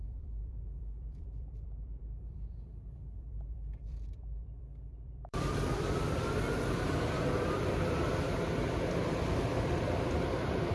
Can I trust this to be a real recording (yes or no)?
no